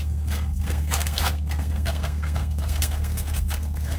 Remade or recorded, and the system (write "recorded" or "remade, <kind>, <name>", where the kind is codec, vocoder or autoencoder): remade, codec, SNAC